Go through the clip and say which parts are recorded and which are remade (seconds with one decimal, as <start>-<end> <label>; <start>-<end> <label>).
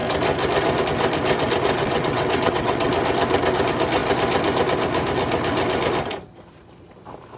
0.0-1.8 recorded; 1.8-2.9 remade; 2.9-7.4 recorded